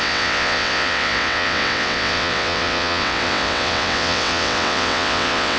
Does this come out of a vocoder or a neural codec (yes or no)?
yes